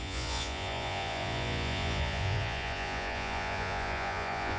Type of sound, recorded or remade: remade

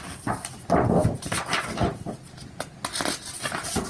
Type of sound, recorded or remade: recorded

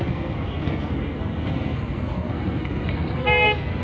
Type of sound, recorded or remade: remade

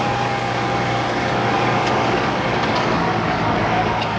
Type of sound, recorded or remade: remade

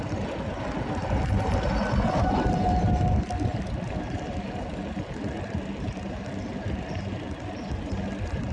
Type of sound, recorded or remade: recorded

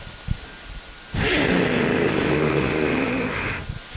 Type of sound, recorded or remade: recorded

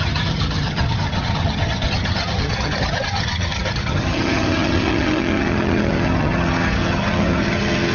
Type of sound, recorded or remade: remade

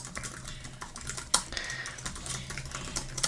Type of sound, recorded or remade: recorded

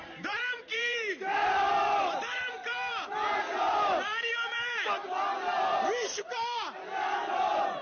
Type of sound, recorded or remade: remade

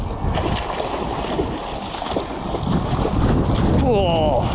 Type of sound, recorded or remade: recorded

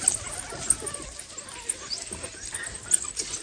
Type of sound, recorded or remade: recorded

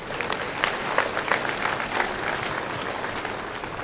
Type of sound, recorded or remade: recorded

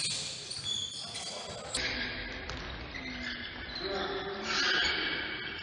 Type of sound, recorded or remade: recorded